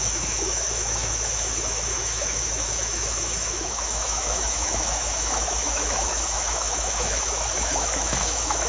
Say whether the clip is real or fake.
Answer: fake